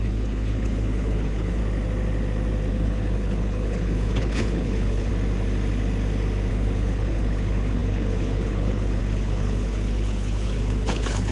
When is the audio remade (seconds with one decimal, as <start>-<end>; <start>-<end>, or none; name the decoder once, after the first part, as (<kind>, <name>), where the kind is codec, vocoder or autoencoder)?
0.0-1.6 (codec, HILCodec); 2.7-5.1; 6.5-11.3